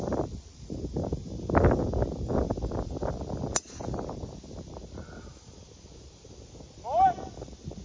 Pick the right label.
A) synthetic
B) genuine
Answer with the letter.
B